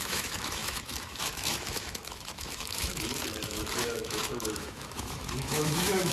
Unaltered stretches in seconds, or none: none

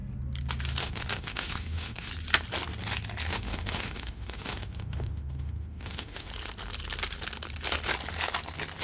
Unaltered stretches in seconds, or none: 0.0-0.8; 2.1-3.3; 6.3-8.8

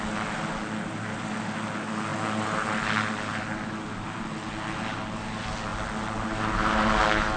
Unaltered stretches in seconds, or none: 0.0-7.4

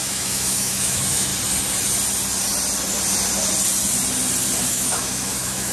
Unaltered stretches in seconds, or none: 1.3-4.7

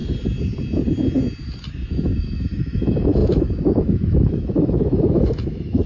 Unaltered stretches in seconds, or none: 0.0-1.9

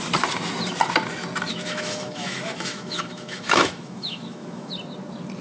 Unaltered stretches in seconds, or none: 0.0-1.5; 4.7-5.4

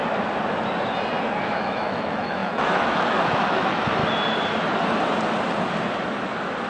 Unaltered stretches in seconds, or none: 0.0-1.4; 4.0-6.7

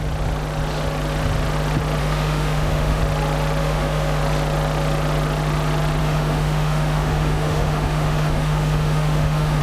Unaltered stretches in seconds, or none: 0.0-2.0; 3.0-3.6; 4.2-6.0